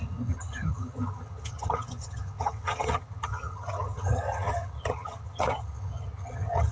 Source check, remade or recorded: remade